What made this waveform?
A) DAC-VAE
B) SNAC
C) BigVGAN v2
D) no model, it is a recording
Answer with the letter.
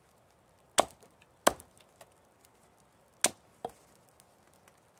D